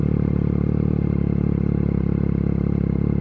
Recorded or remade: recorded